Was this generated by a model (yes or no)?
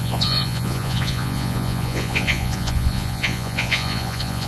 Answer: yes